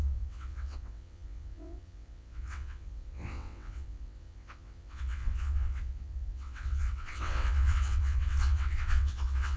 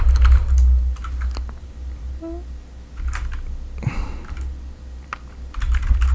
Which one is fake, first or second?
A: first